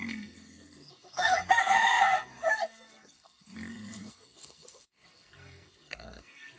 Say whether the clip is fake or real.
fake